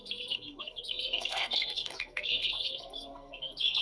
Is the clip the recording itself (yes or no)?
no